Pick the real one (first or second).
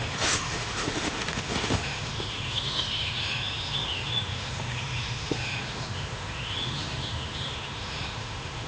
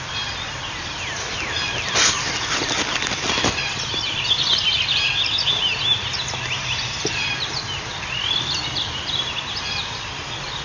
second